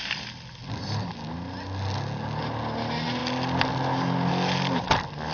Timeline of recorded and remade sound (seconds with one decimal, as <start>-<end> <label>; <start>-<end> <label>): 0.0-5.3 recorded